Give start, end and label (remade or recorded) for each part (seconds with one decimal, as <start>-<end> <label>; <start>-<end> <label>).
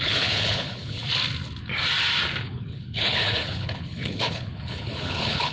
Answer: 0.0-1.0 remade; 1.0-2.4 recorded; 2.4-5.5 remade